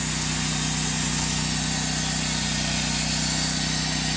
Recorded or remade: recorded